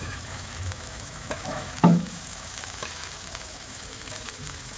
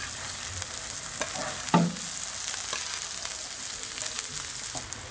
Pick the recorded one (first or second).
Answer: second